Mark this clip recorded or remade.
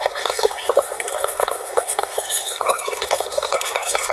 remade